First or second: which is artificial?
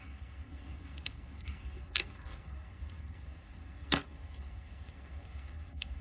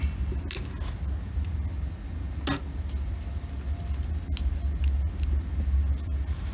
first